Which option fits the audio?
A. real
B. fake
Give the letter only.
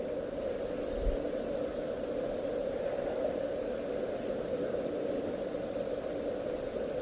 A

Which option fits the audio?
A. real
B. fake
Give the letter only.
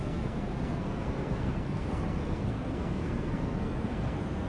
B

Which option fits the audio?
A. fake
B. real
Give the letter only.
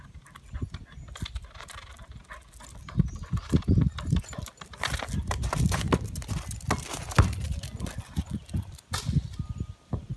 B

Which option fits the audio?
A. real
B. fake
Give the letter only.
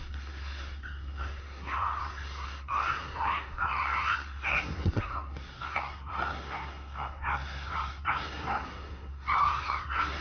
B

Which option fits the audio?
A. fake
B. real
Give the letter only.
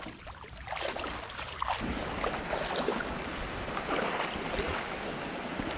B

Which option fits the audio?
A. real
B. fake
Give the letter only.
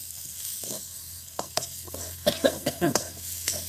B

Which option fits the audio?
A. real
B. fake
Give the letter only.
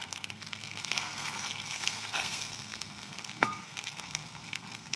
B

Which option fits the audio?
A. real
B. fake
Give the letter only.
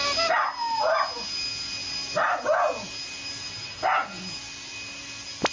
A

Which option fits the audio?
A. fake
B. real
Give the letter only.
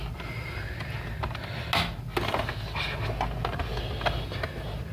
B